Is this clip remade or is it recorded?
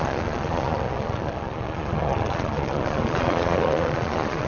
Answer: remade